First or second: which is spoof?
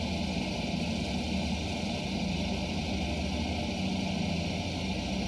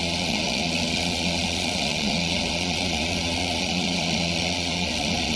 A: second